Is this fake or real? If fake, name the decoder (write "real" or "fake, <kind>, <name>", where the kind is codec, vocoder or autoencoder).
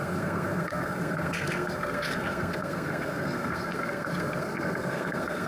fake, codec, SNAC